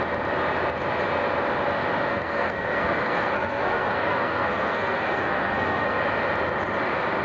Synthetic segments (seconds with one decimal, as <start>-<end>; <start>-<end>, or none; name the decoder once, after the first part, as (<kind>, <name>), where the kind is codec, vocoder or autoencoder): 2.1-6.0 (codec, SNAC)